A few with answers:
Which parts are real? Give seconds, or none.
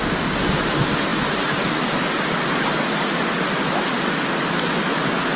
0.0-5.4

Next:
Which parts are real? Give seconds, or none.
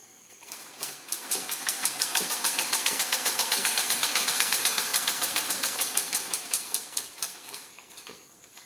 none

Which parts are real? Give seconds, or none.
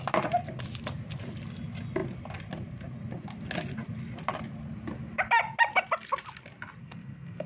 0.0-6.8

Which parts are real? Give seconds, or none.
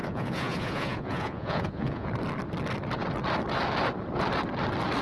2.1-5.0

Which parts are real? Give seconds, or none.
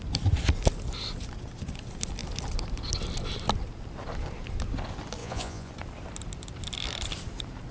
0.0-5.2; 5.7-7.7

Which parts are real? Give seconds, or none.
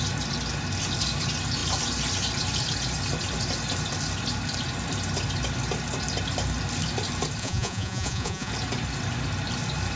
0.0-7.4; 8.5-10.0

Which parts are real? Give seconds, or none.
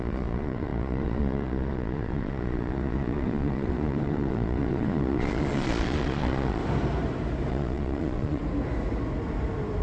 6.6-7.5; 8.4-9.8